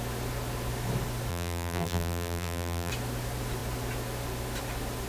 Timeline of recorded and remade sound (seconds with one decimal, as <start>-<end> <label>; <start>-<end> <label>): 0.0-1.3 recorded; 1.3-2.9 remade; 2.9-5.1 recorded